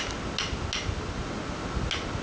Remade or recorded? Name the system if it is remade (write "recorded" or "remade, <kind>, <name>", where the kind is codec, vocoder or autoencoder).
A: recorded